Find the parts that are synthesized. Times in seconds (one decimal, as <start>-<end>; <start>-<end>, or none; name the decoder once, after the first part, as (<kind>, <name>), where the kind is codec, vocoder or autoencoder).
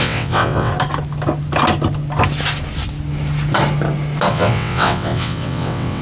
0.0-0.7 (vocoder, WaveNeXt); 4.3-6.0